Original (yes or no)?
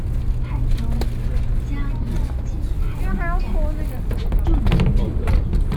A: yes